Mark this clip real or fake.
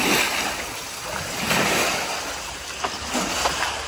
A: real